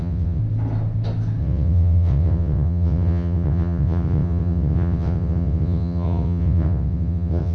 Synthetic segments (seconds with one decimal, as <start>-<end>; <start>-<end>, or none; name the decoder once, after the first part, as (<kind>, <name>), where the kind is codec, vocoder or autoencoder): 0.0-0.4 (vocoder, WaveNeXt); 1.4-7.5